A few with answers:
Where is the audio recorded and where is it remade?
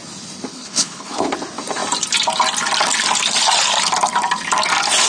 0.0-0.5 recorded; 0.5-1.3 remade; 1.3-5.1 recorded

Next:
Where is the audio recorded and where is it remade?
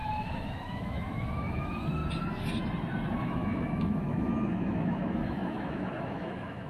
0.0-2.0 remade; 2.0-3.2 recorded; 3.2-6.7 remade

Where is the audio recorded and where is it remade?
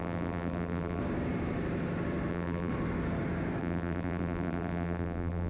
0.0-1.0 remade; 1.0-2.3 recorded; 2.3-2.7 remade; 2.7-3.6 recorded; 3.6-5.5 remade